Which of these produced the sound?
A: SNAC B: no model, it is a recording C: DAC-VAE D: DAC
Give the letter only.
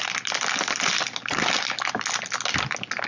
B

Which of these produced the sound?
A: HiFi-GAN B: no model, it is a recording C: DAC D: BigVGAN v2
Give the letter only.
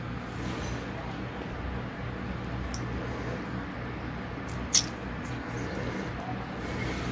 B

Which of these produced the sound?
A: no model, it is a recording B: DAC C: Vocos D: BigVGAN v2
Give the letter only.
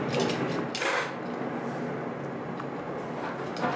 A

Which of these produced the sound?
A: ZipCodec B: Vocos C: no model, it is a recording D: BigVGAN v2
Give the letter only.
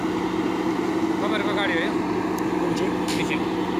C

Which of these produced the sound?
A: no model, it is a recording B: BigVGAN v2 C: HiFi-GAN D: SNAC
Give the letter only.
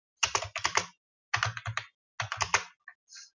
A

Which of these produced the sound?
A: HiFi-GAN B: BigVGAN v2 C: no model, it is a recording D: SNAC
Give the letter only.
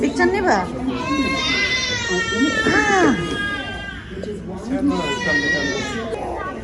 C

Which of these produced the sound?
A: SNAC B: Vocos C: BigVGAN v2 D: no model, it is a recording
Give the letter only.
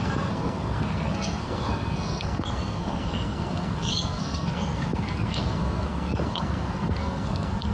A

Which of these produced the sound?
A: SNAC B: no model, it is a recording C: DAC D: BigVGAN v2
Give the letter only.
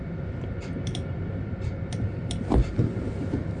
B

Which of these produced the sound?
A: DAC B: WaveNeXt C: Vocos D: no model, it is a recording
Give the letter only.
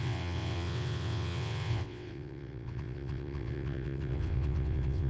B